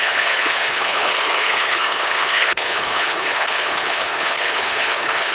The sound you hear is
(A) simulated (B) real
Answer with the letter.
A